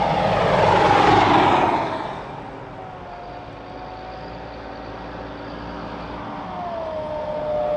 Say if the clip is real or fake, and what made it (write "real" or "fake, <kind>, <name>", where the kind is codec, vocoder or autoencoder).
real